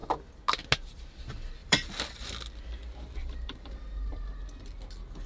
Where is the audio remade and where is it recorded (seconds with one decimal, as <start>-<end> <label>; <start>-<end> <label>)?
0.0-1.6 recorded; 1.6-2.3 remade; 2.3-3.2 recorded; 3.2-4.4 remade; 4.4-5.3 recorded